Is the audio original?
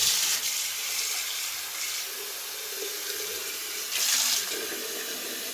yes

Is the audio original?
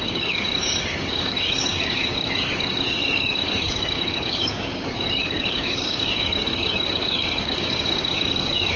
no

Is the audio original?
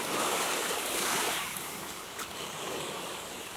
no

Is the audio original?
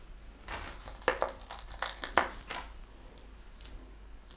yes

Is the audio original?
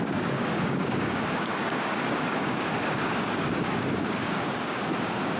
no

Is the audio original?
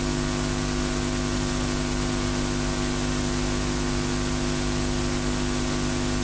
yes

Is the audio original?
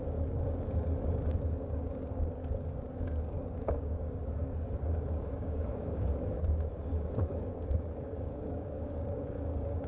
no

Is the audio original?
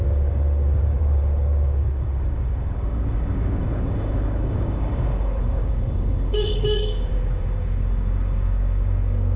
no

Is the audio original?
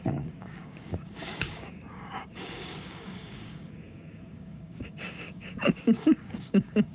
no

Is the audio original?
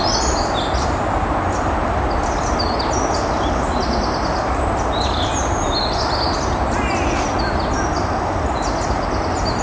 yes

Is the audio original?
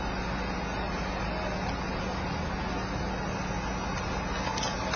yes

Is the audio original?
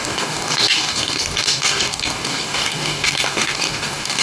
no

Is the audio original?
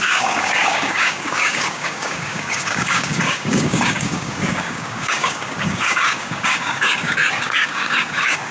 no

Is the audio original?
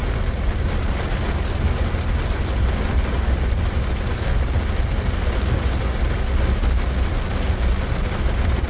yes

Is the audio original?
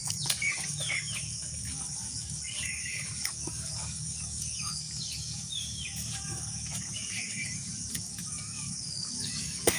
no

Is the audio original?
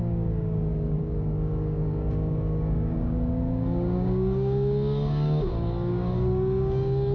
no